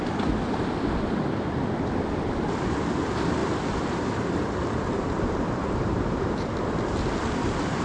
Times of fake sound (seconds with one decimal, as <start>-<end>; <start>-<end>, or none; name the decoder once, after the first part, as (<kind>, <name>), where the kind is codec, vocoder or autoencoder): 3.4-6.7 (vocoder, BigVGAN v2)